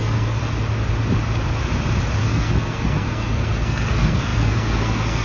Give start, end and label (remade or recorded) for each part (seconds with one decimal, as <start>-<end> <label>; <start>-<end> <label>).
0.0-0.4 remade; 0.4-2.2 recorded; 2.2-5.2 remade